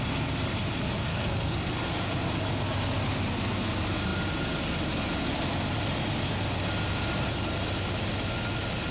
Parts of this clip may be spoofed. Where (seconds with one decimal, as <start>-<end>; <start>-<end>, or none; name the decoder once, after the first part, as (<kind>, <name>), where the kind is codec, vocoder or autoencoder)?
1.1-1.7 (codec, SNAC)